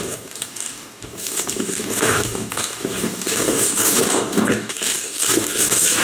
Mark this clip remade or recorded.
remade